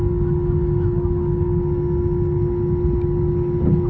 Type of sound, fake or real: real